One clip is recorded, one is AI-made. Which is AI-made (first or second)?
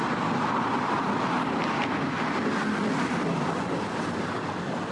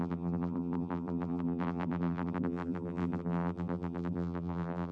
second